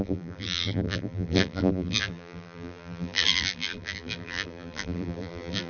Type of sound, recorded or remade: remade